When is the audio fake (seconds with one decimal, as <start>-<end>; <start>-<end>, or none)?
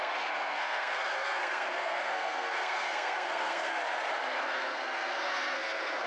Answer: 0.0-3.7; 4.4-6.1